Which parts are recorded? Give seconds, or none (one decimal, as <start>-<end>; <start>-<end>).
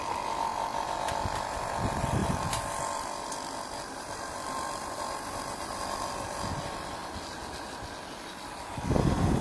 7.0-8.3